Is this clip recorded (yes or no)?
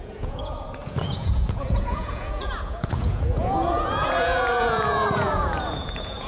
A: no